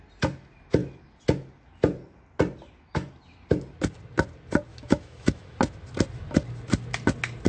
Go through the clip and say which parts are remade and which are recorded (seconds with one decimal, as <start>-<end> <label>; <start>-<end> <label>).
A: 0.0-4.7 recorded; 4.7-5.6 remade; 5.6-7.5 recorded